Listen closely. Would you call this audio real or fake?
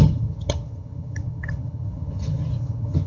fake